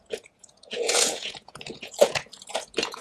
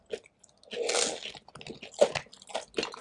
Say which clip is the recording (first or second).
second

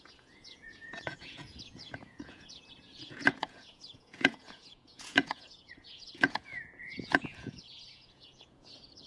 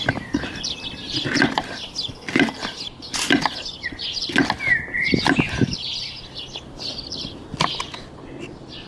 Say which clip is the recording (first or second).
second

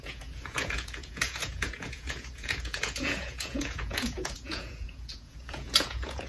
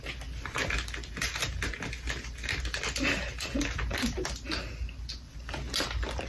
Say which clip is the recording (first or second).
second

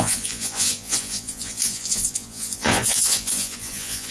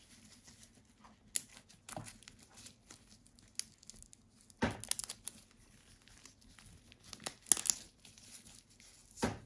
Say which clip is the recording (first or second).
second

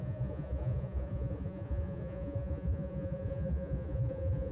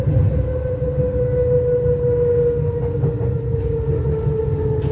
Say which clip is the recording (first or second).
second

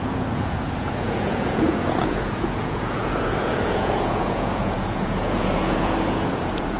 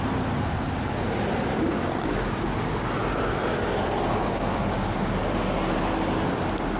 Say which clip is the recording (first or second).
second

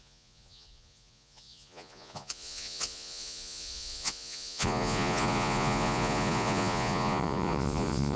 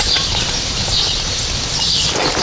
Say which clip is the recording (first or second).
second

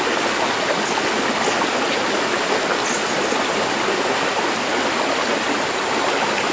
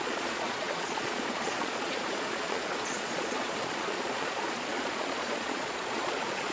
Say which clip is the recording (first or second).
first